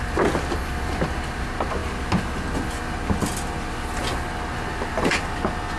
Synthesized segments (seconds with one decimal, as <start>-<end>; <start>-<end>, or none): none